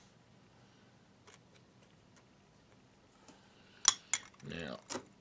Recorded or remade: recorded